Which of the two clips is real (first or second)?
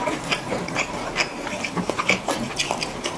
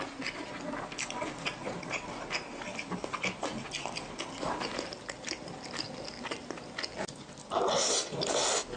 second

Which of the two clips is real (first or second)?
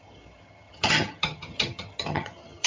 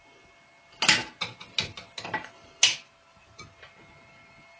second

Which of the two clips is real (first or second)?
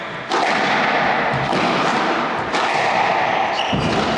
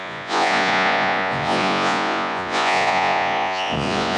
first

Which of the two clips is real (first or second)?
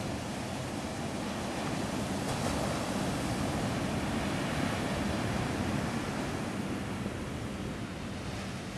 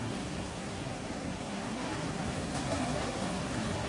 first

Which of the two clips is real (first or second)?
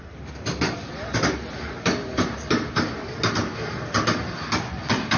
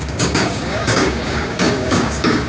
first